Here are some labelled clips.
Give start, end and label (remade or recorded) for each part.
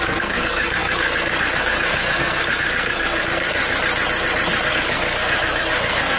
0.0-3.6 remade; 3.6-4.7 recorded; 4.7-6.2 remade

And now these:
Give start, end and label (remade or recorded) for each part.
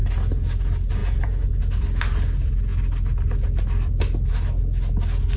0.0-1.0 recorded; 1.0-1.6 remade; 1.6-5.4 recorded